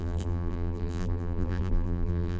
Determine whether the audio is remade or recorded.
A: remade